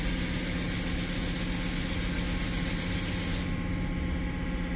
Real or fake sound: real